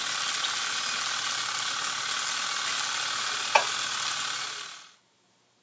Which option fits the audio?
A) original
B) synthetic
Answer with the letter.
A